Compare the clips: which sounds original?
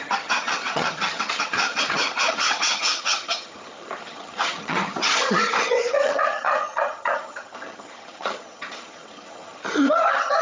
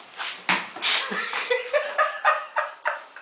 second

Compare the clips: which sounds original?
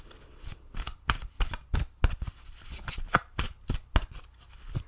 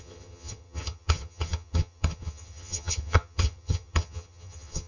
first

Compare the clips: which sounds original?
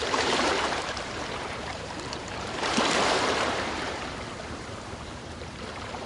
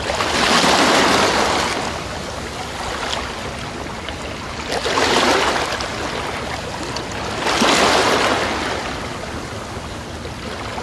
second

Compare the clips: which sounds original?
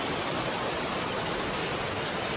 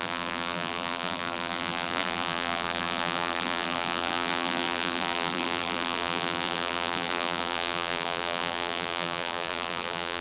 first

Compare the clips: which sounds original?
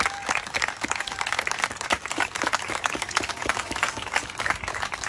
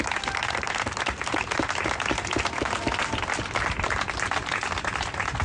second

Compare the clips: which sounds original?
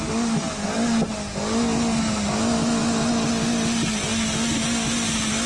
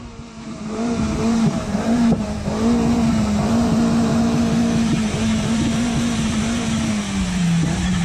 first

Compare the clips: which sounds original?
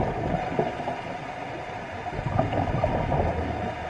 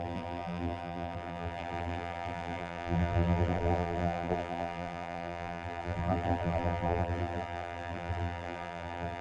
first